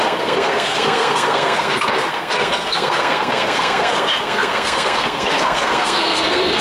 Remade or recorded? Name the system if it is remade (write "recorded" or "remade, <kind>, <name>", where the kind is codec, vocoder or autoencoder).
remade, codec, SNAC